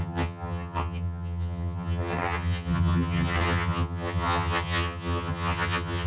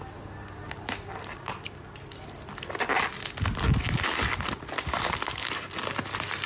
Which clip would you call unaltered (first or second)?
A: second